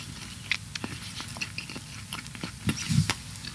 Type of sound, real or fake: real